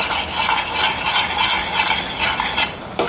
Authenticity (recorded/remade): recorded